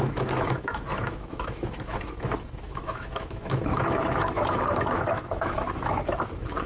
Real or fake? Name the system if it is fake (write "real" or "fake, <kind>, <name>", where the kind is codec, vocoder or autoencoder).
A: fake, autoencoder, DAC-VAE